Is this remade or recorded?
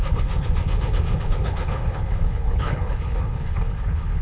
remade